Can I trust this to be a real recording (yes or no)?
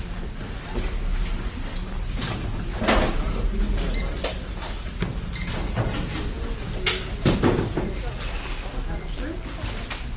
yes